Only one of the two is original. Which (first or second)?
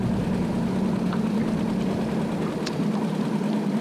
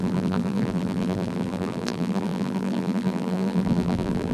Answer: first